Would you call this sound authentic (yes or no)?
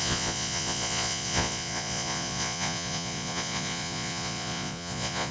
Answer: no